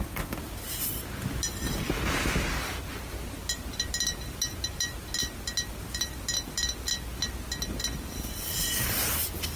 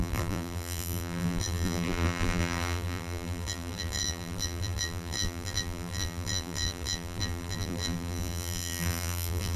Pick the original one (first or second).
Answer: first